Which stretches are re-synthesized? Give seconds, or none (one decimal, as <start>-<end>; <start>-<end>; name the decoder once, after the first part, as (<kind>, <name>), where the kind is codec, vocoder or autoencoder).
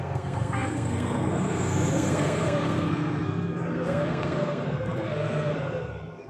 0.0-6.3 (codec, SNAC)